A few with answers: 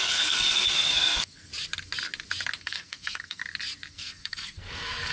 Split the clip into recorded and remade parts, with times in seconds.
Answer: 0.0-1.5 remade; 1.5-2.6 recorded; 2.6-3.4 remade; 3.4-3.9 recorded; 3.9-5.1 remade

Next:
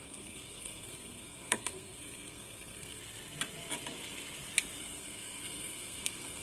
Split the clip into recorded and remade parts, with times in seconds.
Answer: 0.0-3.0 remade; 3.0-4.8 recorded; 4.8-6.4 remade

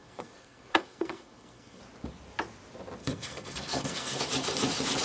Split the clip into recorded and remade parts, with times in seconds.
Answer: 0.0-1.8 remade; 1.8-3.0 recorded; 3.0-4.2 remade; 4.2-5.0 recorded

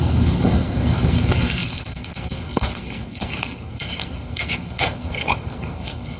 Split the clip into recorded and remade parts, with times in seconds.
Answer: 0.0-6.2 remade

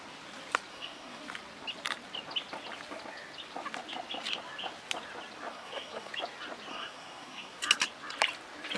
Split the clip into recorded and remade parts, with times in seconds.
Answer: 0.0-0.7 recorded; 0.7-1.2 remade; 1.2-5.5 recorded; 5.5-6.1 remade; 6.1-6.7 recorded; 6.7-7.6 remade; 7.6-8.8 recorded